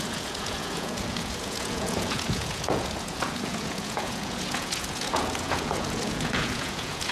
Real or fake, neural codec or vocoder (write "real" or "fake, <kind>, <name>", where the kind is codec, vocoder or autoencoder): fake, vocoder, Vocos